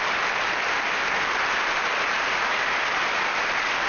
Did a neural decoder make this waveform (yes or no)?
no